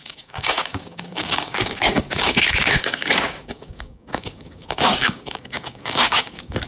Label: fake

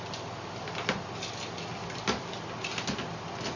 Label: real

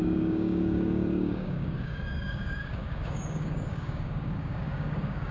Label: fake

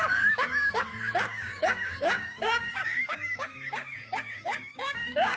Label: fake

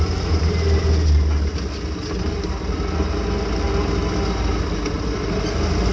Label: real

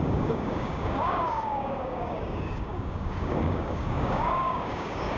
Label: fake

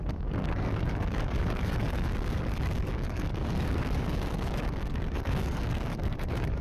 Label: fake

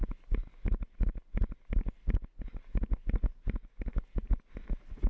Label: real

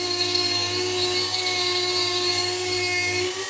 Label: fake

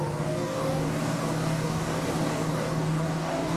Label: fake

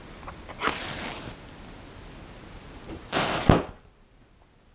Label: real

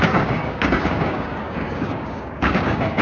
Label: fake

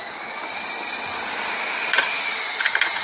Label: real